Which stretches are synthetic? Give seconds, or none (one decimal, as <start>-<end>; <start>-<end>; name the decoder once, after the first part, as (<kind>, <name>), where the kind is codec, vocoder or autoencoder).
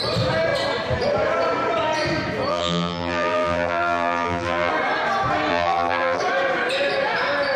2.5-4.7 (vocoder, BigVGAN v2); 5.5-6.2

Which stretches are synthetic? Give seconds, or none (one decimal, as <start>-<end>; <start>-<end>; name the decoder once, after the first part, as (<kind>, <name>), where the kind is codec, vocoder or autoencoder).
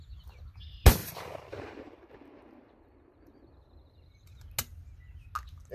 1.0-4.4 (vocoder, BigVGAN v2)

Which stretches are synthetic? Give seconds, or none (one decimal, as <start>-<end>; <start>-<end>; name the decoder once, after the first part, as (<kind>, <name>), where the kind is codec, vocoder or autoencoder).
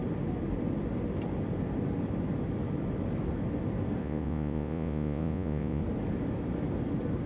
4.0-5.8 (vocoder, Vocos)